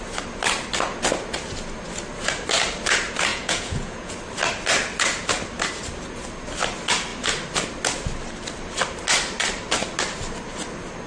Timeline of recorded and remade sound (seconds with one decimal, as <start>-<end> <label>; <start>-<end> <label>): 0.0-3.3 recorded; 3.3-4.1 remade; 4.1-11.1 recorded

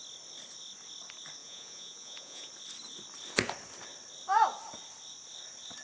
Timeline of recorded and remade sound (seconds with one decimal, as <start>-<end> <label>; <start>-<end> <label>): 0.0-1.4 recorded; 1.4-2.5 remade; 2.5-5.8 recorded